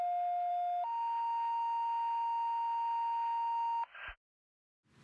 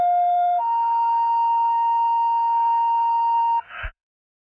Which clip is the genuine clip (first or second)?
first